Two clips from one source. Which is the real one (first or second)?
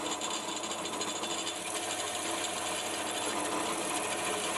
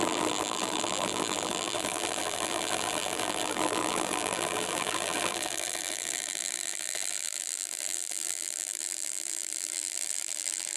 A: first